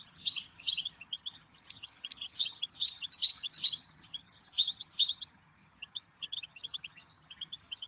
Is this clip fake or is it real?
fake